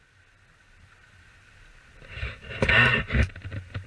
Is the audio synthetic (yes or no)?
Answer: no